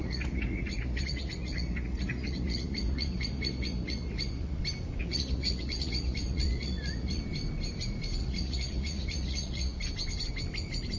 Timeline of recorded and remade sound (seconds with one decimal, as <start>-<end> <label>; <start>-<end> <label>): 0.0-4.6 remade; 4.6-5.0 recorded; 5.0-7.2 remade; 7.2-8.2 recorded; 8.2-9.8 remade; 9.8-11.0 recorded